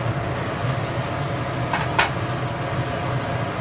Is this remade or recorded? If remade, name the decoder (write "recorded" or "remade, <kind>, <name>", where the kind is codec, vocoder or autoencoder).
recorded